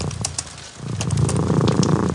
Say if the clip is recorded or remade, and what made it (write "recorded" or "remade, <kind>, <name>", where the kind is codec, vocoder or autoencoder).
remade, vocoder, BigVGAN v2